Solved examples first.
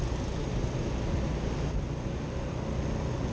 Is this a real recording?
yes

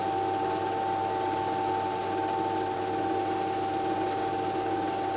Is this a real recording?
yes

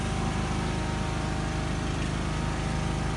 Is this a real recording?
yes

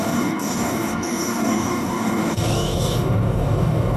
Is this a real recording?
no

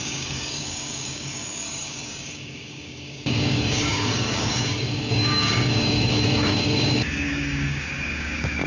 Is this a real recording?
no